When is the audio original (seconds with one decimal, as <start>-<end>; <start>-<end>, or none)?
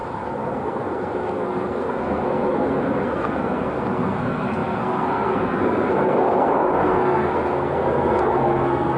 none